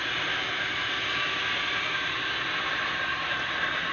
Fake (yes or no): no